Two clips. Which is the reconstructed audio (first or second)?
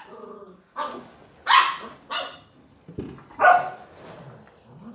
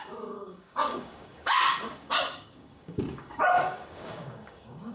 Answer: second